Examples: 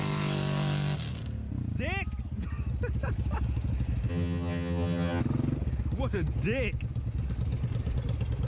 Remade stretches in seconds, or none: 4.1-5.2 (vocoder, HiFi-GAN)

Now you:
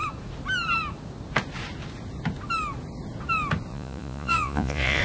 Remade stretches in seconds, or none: 3.7-5.0 (vocoder, Vocos)